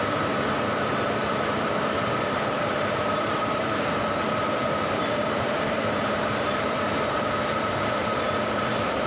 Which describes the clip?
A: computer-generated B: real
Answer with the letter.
A